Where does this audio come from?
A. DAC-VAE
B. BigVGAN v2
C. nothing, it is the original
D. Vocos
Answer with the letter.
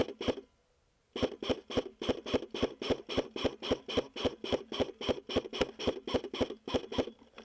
C